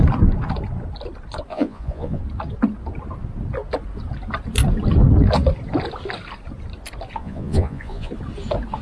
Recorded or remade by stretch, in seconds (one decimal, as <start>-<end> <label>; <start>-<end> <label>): 0.0-1.5 recorded; 1.5-2.2 remade; 2.2-7.2 recorded; 7.2-8.1 remade; 8.1-8.8 recorded